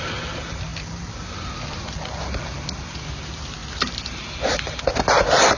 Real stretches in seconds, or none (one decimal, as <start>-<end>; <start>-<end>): 0.0-3.6; 4.2-5.6

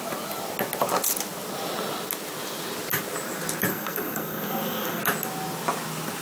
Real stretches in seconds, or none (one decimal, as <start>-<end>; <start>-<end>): 0.0-3.7; 5.0-6.2

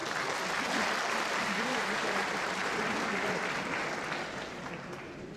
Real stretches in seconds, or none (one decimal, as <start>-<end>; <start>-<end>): 0.0-1.4; 2.6-5.0

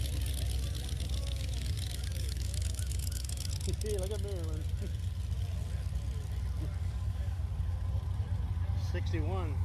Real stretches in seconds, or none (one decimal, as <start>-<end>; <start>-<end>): 0.0-1.2; 3.5-6.8; 7.4-9.6

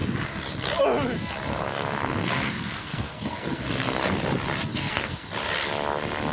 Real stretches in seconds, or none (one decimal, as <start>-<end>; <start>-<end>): 0.0-1.5; 4.2-4.7; 5.3-6.3